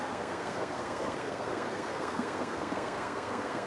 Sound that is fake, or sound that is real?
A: fake